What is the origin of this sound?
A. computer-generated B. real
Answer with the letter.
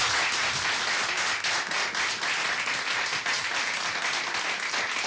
B